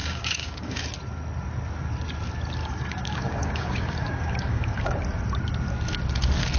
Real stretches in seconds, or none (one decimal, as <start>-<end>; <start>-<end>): 0.8-2.6; 5.0-6.6